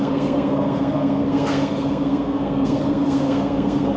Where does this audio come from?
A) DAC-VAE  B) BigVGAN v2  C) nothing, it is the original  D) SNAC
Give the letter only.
D